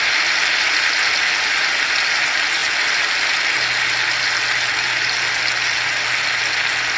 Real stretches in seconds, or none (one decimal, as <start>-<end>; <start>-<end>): 0.0-7.0

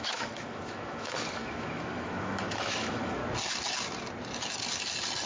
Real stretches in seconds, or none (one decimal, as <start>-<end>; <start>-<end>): 3.2-5.3